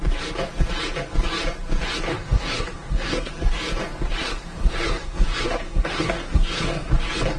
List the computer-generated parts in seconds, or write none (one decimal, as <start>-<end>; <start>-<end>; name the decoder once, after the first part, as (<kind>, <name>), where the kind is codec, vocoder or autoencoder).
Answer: 2.1-3.3 (codec, SNAC); 4.2-6.9